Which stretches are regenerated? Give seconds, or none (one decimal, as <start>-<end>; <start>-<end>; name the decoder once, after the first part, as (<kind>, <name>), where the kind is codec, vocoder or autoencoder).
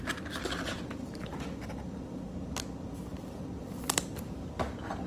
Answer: none